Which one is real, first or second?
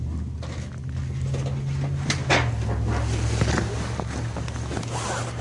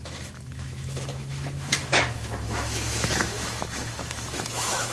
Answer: first